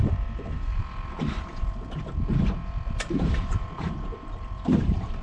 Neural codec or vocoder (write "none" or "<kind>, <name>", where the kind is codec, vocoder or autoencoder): vocoder, BigVGAN v2